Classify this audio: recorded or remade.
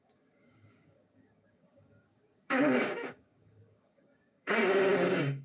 remade